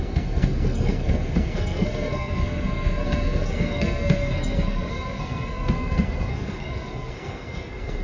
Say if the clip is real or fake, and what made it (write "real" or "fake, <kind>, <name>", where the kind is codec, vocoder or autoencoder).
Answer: fake, codec, SNAC